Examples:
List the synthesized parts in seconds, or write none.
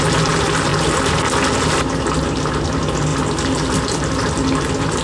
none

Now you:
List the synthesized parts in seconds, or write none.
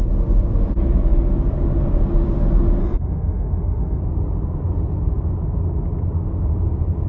2.8-4.0 (autoencoder, DAC-VAE)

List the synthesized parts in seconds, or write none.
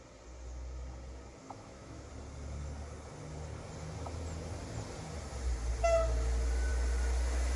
1.4-2.1 (autoencoder, DAC-VAE)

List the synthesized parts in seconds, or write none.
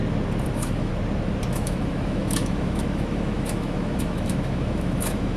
0.5-0.9 (autoencoder, DAC-VAE); 1.5-5.4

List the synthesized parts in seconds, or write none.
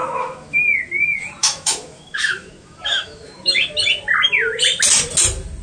0.0-0.6 (autoencoder, DAC-VAE); 1.4-3.6